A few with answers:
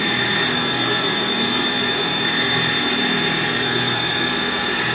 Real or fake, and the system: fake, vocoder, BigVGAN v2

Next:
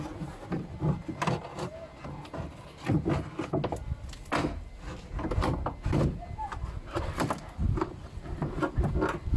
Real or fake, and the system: real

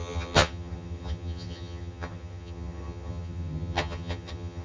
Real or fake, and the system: fake, vocoder, HiFi-GAN